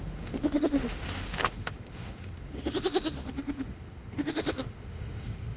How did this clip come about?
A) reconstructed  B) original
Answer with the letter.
A